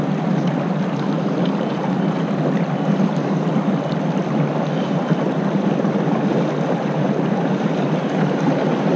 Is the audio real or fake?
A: real